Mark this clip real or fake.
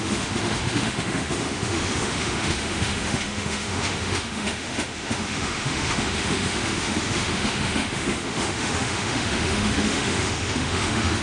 fake